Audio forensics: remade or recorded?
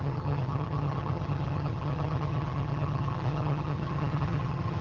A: remade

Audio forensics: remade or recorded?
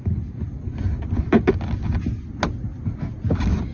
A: recorded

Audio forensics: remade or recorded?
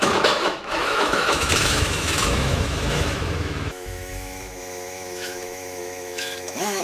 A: remade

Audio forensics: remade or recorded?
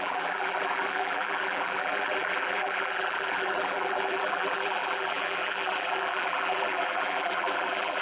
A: remade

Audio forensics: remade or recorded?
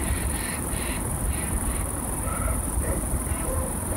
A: remade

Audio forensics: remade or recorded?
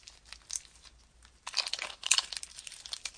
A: recorded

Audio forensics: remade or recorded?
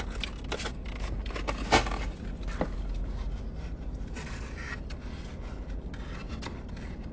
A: recorded